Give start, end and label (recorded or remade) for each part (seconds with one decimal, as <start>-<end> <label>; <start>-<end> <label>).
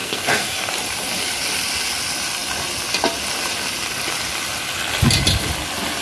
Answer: 0.0-0.7 remade; 0.7-6.0 recorded